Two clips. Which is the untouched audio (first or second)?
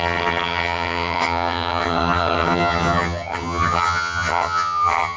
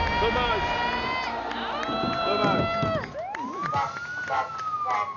second